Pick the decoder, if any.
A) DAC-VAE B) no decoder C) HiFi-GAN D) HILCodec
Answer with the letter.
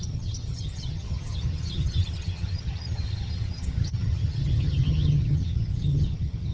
C